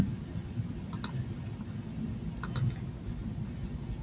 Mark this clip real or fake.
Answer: real